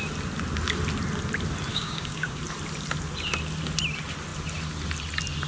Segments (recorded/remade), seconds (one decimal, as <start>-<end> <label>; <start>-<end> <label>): 0.0-1.7 recorded; 1.7-2.4 remade; 2.4-5.5 recorded